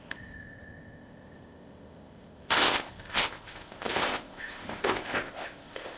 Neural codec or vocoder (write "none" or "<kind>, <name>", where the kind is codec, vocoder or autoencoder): codec, ZipCodec